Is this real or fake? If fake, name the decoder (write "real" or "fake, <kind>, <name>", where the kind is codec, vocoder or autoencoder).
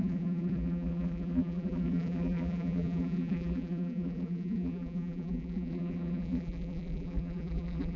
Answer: fake, vocoder, BigVGAN v2